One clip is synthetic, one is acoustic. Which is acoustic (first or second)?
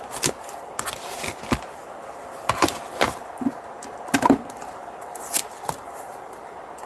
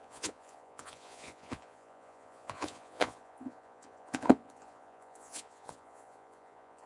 first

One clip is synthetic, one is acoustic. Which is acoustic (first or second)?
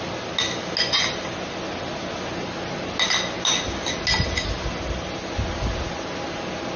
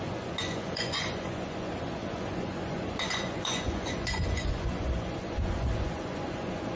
first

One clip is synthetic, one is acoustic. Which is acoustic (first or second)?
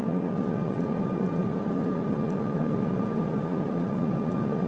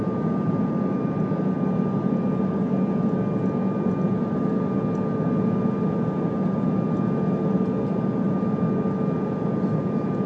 second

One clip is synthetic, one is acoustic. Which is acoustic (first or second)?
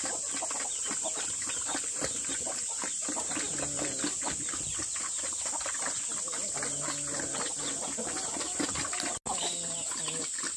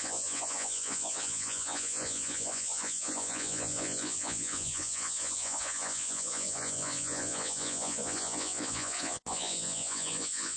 first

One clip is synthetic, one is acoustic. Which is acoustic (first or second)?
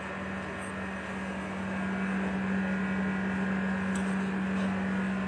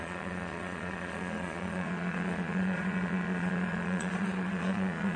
first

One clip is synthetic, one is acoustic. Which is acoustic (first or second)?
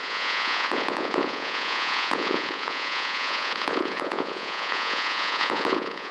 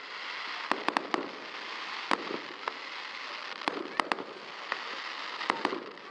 second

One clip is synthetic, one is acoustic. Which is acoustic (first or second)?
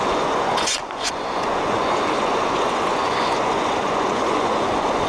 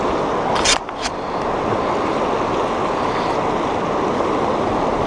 second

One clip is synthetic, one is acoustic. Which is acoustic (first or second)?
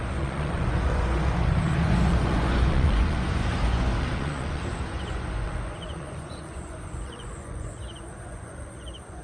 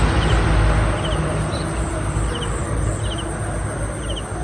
second